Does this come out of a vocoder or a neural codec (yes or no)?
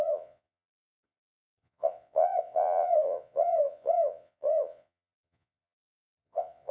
yes